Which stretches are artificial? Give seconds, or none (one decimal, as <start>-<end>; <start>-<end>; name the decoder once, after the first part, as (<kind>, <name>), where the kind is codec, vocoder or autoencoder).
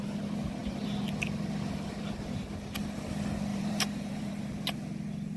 0.6-2.0 (vocoder, BigVGAN v2); 3.5-4.3